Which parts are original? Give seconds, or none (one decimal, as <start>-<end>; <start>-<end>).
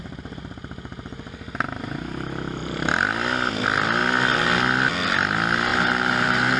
0.0-5.7